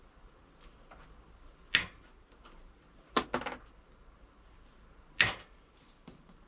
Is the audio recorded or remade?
recorded